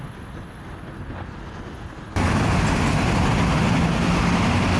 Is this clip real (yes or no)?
yes